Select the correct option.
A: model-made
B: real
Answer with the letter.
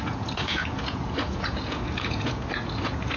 A